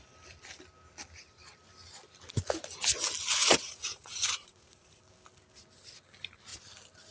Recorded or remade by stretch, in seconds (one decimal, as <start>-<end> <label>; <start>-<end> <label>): 0.0-3.4 recorded; 3.4-5.0 remade; 5.0-7.1 recorded